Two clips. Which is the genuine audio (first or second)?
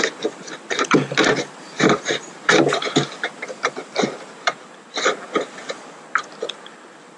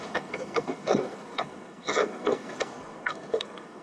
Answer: first